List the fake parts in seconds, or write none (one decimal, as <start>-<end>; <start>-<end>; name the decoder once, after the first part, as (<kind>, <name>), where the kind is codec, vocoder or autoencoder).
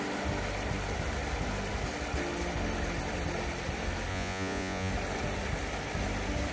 4.1-4.9 (vocoder, Vocos)